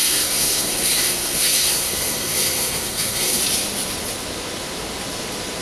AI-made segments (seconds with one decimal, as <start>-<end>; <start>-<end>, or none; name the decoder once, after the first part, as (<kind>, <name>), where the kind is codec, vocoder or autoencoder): 0.0-3.4 (codec, SNAC)